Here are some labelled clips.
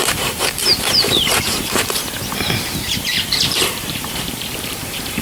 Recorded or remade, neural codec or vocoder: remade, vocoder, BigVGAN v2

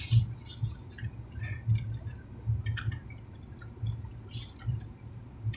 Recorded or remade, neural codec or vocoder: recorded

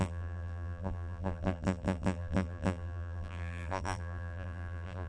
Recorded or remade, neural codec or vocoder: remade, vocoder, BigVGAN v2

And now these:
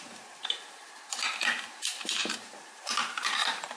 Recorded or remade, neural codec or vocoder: remade, vocoder, BigVGAN v2